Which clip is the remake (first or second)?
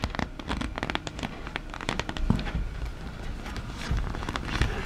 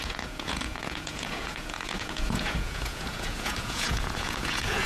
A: second